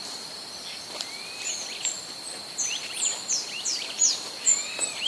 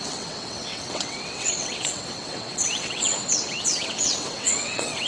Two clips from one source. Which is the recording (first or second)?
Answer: first